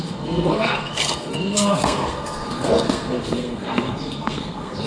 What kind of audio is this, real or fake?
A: fake